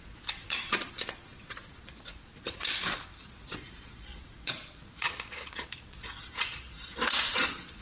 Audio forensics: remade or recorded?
remade